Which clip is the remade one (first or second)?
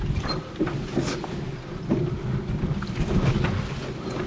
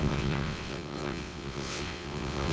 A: second